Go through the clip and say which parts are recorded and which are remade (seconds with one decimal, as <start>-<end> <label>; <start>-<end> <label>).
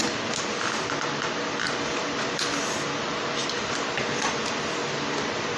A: 0.0-5.6 recorded